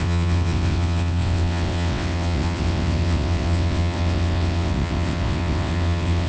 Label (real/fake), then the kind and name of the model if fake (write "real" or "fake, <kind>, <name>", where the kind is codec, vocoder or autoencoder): fake, vocoder, WaveNeXt